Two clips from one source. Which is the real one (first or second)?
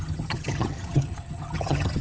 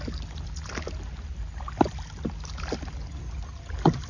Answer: second